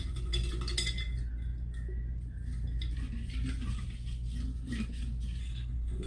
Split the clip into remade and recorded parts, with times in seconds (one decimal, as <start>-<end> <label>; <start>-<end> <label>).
0.0-5.4 recorded; 5.4-6.1 remade